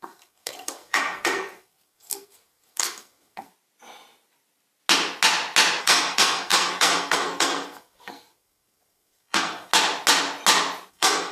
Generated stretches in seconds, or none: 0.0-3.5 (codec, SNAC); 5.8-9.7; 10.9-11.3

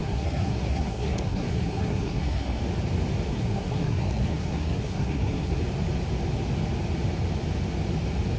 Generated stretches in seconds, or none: 0.0-2.6 (codec, SNAC); 3.3-5.6

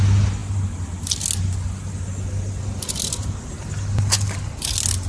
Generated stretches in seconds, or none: none